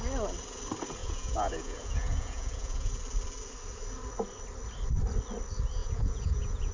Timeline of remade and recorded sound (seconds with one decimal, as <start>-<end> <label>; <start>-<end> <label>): 0.0-1.0 recorded; 1.0-2.9 remade; 2.9-5.8 recorded; 5.8-6.7 remade